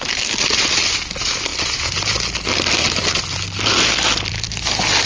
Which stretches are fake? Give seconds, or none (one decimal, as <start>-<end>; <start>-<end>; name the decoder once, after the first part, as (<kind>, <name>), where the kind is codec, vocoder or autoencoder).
none